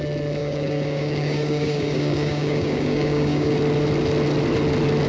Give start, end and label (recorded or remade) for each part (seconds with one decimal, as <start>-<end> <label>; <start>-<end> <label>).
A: 0.0-0.4 recorded; 0.4-3.5 remade; 3.5-5.1 recorded